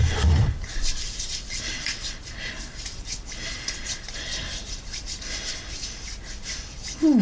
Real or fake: real